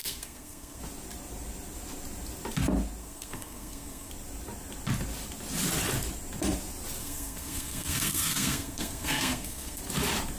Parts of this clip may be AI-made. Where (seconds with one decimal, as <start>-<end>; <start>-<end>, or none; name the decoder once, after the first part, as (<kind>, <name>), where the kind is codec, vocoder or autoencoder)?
0.0-0.8 (codec, SNAC); 3.0-4.1; 7.0-9.8